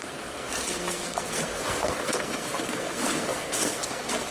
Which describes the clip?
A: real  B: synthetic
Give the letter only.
B